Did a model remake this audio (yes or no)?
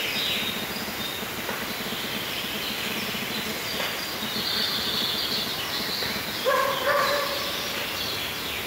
no